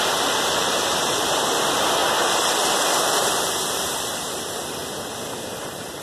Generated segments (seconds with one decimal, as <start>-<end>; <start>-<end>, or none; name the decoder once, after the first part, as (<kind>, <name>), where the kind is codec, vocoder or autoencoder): 0.0-2.0 (vocoder, BigVGAN v2); 2.7-4.8; 5.6-6.0